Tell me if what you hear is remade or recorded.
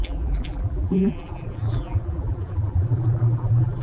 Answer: remade